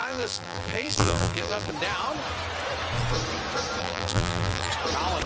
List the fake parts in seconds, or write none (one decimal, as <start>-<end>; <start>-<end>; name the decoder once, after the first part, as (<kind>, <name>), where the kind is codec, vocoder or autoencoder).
0.0-1.7 (vocoder, BigVGAN v2); 3.8-4.7